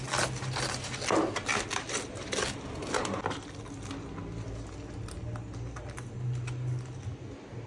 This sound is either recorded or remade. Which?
recorded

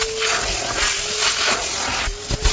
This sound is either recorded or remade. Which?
recorded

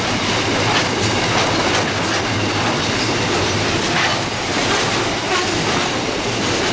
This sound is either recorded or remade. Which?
recorded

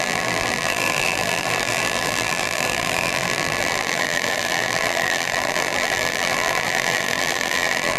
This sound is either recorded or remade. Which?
remade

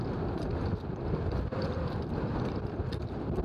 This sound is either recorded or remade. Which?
remade